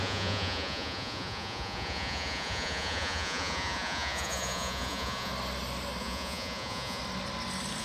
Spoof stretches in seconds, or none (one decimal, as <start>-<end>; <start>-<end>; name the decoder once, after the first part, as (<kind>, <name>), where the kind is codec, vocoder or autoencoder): 0.0-5.3 (vocoder, Vocos); 6.0-7.0